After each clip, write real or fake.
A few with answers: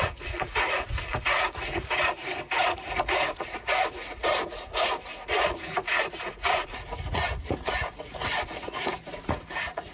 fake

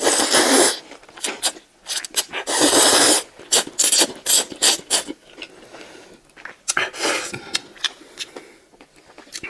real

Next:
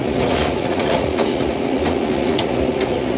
fake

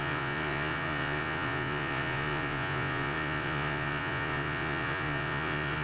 fake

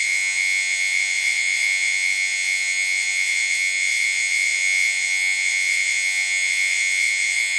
fake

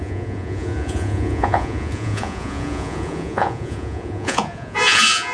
fake